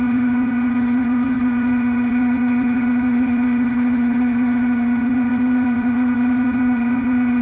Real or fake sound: fake